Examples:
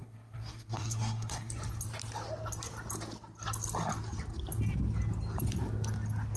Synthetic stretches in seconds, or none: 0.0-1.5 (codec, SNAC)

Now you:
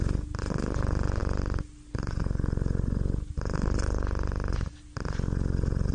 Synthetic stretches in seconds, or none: none

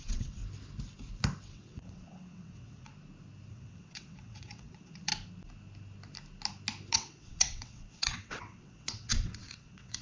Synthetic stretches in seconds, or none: 0.0-0.4 (vocoder, WaveNeXt); 1.5-2.9; 3.5-5.1; 6.9-10.0

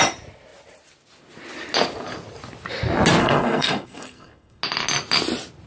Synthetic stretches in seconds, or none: 3.2-4.6 (codec, SNAC)

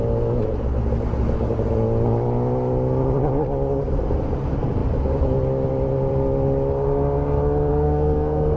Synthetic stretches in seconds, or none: 7.7-8.6 (codec, SNAC)

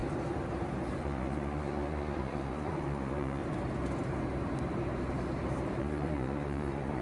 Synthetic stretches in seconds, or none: 1.0-3.4 (vocoder, Vocos); 5.8-7.0

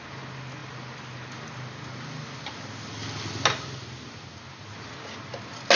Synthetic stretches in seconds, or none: none

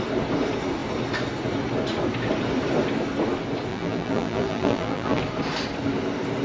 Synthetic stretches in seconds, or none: 3.7-5.2 (vocoder, BigVGAN v2)